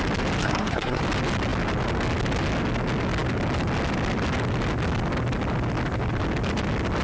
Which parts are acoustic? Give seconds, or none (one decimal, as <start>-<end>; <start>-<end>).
0.0-0.4; 1.0-7.0